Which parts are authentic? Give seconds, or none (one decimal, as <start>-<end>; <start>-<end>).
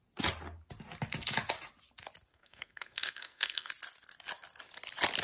0.0-2.3; 3.7-5.2